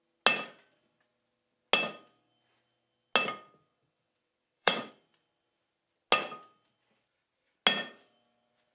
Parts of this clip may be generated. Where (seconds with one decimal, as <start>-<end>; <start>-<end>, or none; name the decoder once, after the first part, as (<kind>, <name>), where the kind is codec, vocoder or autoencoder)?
3.7-4.9 (vocoder, WaveNeXt)